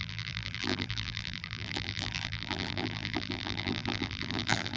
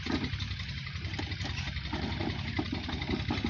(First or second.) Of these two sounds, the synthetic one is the first